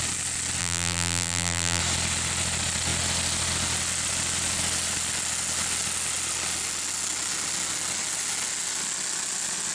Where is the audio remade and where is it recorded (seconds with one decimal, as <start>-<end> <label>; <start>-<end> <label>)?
0.0-0.6 recorded; 0.6-1.8 remade; 1.8-9.7 recorded